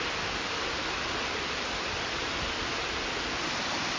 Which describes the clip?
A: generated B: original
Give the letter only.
B